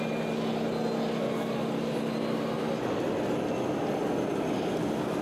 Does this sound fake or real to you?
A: real